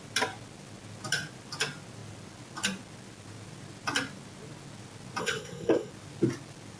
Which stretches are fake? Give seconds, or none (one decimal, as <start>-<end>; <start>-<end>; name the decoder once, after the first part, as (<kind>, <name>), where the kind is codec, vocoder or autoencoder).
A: 5.2-5.9 (codec, SNAC)